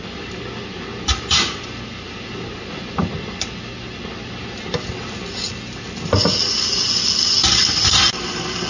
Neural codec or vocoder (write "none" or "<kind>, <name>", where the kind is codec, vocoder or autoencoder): none